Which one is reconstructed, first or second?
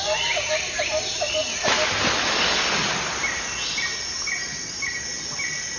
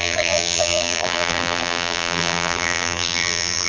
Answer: second